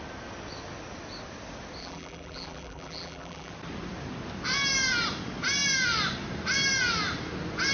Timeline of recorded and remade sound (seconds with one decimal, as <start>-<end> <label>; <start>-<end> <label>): 0.0-1.8 recorded; 1.8-3.5 remade; 3.5-7.7 recorded